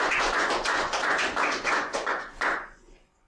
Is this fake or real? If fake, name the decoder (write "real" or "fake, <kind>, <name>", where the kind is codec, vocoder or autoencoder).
fake, vocoder, Vocos